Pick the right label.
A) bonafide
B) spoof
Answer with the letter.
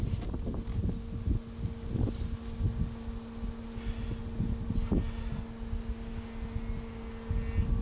A